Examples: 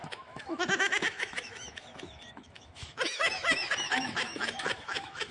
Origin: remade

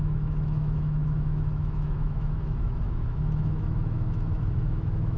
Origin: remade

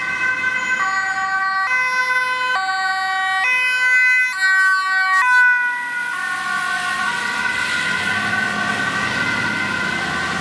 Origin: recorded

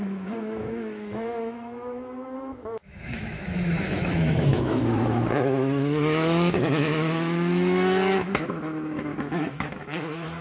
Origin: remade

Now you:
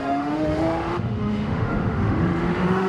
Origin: remade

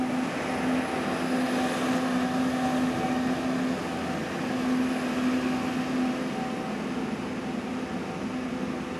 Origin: recorded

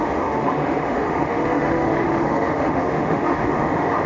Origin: remade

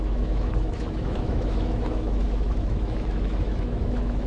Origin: remade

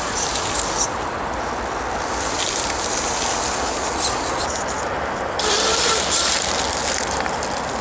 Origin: recorded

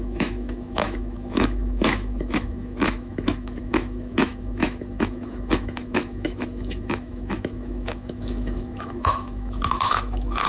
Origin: remade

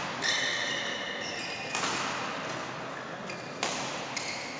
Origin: recorded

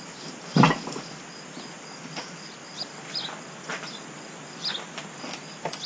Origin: recorded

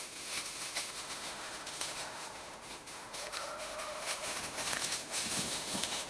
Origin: remade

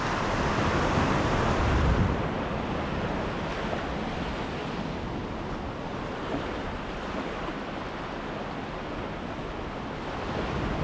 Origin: recorded